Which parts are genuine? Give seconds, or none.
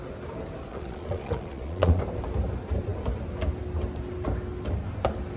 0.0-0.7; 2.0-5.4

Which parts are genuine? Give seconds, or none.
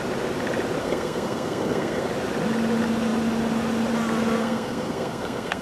0.0-0.8; 2.1-4.4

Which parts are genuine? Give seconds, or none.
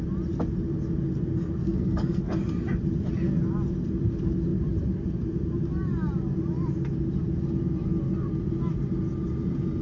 0.0-1.6; 2.2-9.8